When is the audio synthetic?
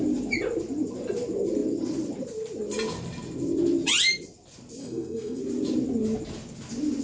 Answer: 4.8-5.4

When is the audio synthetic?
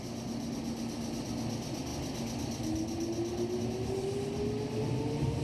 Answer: none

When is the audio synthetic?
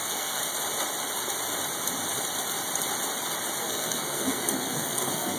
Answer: 0.0-0.4; 3.6-5.4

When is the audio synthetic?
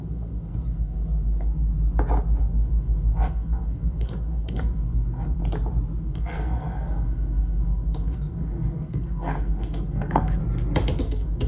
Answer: 0.0-1.7; 2.4-5.4; 6.0-10.4; 11.0-11.5